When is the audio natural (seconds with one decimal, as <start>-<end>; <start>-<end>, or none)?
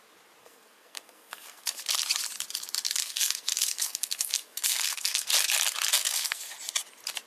0.0-0.4; 1.8-3.0; 5.3-5.9; 6.5-7.3